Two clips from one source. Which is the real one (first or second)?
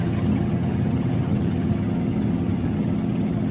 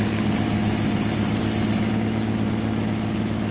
second